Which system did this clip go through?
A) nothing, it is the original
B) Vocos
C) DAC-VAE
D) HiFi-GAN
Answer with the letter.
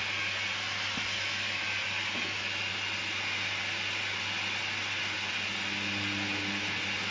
A